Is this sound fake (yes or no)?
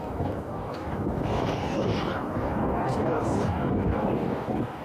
yes